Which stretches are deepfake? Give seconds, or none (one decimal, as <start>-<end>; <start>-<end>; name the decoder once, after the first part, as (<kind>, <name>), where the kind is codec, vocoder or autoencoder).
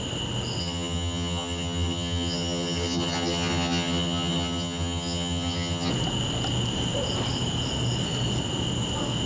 0.6-5.9 (vocoder, HiFi-GAN)